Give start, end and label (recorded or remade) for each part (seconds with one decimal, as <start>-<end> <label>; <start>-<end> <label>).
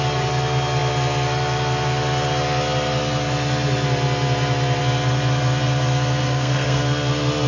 0.0-6.2 recorded; 6.2-6.8 remade; 6.8-7.5 recorded